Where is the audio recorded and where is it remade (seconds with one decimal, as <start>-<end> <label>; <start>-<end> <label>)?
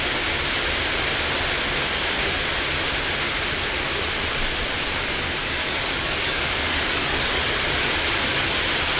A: 0.0-5.4 recorded; 5.4-7.8 remade; 7.8-9.0 recorded